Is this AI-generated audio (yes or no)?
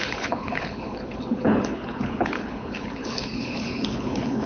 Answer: yes